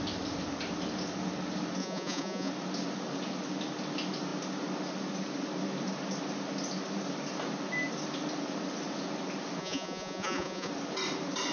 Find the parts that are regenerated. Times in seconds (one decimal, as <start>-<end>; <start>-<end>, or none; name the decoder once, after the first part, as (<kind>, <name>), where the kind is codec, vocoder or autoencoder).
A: 1.8-2.5 (vocoder, Vocos); 9.6-10.7